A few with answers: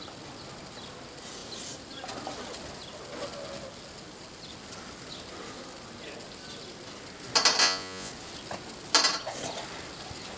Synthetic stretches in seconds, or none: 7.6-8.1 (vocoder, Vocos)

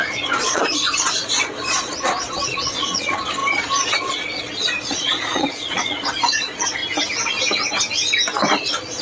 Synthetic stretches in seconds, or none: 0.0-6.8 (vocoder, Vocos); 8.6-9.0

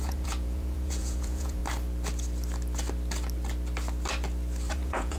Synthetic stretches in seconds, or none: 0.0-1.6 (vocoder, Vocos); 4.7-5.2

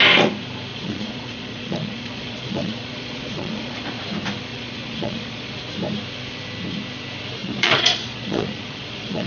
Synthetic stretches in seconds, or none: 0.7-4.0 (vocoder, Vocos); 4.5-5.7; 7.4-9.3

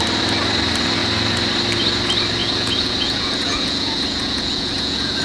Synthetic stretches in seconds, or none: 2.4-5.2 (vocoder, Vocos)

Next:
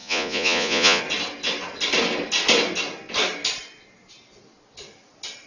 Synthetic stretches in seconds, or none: 0.0-1.0 (vocoder, Vocos)